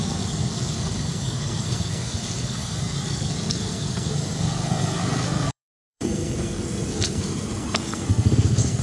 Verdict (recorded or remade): remade